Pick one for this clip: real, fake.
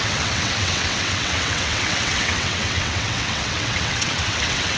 fake